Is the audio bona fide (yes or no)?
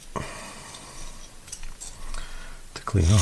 yes